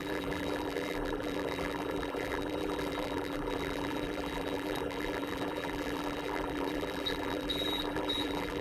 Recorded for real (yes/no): no